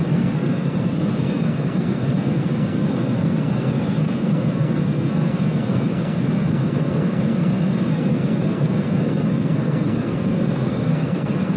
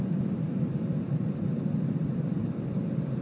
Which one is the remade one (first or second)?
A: first